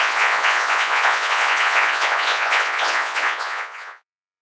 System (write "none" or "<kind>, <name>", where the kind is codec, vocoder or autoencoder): vocoder, Vocos